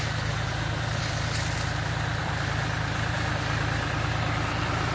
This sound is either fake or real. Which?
fake